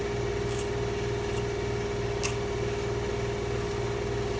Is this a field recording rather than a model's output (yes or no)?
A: yes